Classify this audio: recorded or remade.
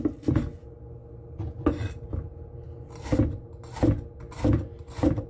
recorded